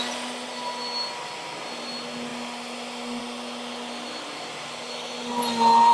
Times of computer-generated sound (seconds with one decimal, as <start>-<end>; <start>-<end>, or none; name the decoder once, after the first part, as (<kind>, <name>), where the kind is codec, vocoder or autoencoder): none